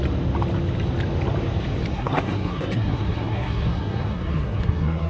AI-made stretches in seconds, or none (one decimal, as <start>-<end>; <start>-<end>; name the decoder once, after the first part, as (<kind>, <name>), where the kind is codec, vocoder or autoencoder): 1.9-5.1 (codec, SNAC)